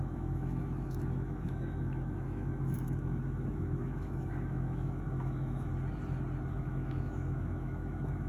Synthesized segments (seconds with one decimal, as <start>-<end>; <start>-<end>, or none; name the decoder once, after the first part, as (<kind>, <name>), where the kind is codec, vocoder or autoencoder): 0.0-5.7 (autoencoder, DAC-VAE); 6.5-8.3